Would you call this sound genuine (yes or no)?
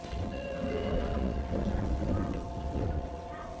no